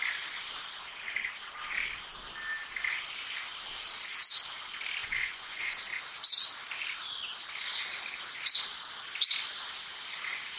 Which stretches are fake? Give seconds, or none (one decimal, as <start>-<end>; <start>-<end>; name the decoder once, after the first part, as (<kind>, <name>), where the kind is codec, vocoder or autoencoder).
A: 5.0-5.8 (vocoder, Vocos)